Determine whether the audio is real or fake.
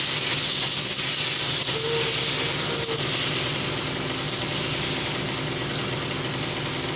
real